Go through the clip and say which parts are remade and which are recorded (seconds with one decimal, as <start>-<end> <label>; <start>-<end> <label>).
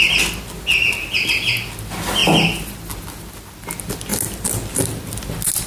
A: 0.0-5.7 recorded